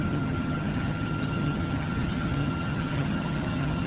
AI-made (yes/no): yes